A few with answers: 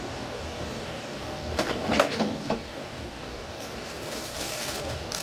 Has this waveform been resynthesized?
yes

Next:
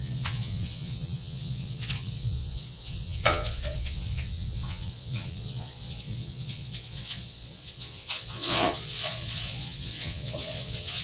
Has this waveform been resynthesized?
yes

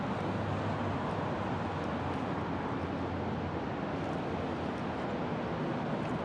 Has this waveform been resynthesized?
no